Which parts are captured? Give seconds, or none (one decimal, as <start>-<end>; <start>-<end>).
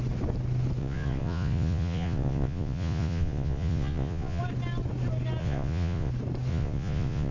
0.0-0.8; 4.4-5.4; 6.1-6.5